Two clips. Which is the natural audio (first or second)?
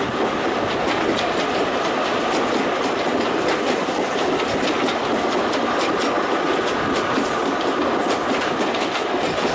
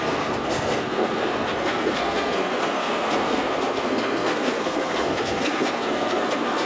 first